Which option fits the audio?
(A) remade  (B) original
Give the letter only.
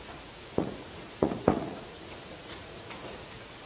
A